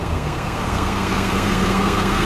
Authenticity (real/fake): fake